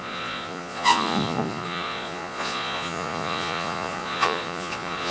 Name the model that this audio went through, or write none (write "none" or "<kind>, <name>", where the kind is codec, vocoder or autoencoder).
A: vocoder, Vocos